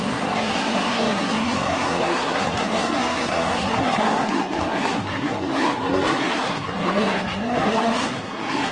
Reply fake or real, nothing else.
fake